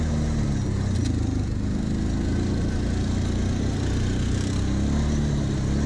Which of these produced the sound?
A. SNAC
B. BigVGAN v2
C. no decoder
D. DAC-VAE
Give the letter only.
C